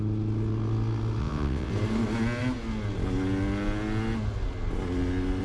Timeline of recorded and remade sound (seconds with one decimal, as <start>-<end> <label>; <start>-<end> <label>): 0.0-1.2 recorded; 1.2-1.7 remade; 1.7-5.4 recorded